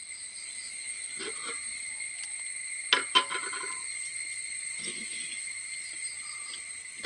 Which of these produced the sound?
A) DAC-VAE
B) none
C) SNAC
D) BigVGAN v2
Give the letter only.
B